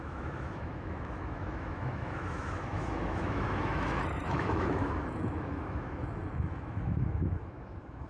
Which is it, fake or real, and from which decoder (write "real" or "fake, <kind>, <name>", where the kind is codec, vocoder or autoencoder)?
fake, autoencoder, DAC-VAE